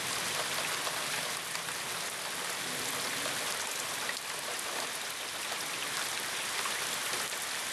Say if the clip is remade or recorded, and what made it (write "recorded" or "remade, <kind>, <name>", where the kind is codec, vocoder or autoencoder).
recorded